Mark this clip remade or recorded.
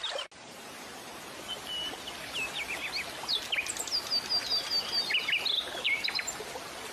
recorded